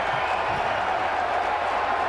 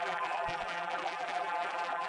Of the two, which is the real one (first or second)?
first